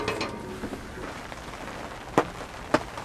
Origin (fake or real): real